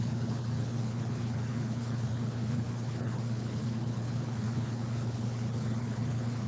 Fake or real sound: fake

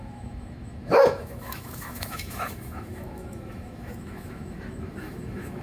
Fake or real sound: fake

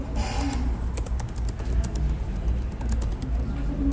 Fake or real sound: real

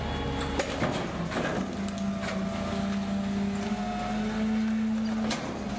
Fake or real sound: real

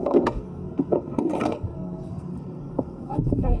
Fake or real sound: fake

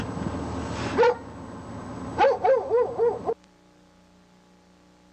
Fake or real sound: real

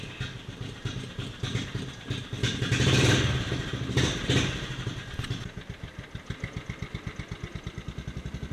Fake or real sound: real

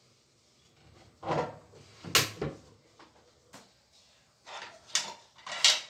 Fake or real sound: real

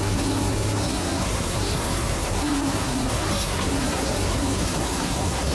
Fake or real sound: fake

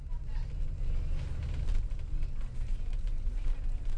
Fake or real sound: real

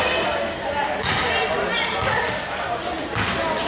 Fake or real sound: real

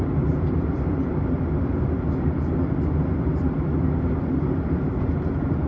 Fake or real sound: fake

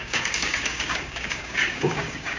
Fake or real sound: fake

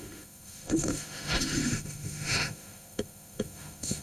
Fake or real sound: fake